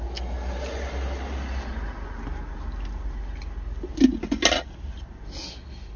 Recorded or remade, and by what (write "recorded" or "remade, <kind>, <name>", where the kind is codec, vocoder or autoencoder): recorded